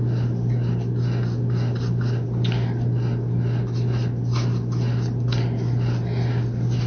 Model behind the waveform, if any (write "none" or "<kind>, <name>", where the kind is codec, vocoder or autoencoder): none